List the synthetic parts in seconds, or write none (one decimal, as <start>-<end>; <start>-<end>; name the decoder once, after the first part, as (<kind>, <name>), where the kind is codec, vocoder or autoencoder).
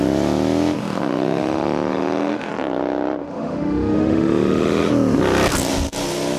0.8-2.5 (autoencoder, DAC-VAE); 3.2-4.9